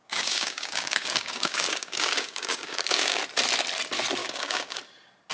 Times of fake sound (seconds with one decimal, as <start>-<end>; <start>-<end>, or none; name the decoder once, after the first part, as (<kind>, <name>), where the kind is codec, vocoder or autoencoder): 0.0-3.2 (codec, DAC); 4.2-4.8